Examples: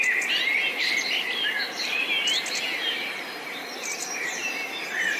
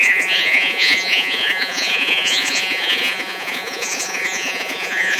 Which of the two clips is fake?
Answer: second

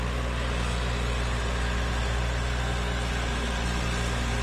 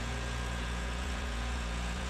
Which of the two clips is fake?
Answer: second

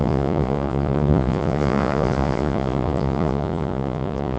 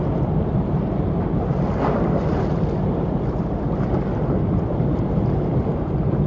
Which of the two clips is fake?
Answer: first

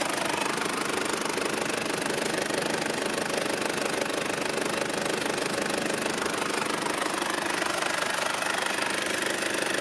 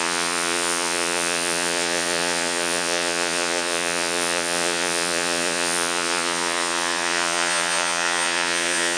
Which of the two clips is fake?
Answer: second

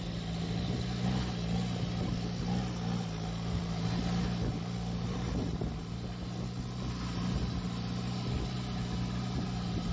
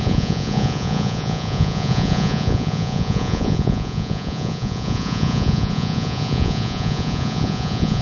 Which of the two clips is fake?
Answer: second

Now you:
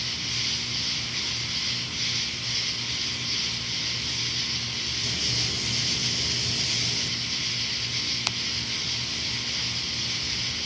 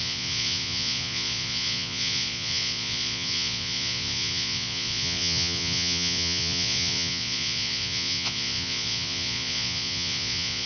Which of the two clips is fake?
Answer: second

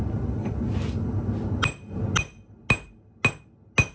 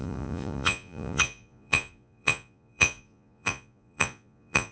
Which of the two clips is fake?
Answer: second